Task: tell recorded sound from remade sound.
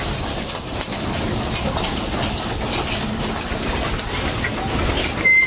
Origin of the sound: recorded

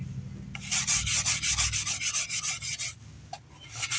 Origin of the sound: recorded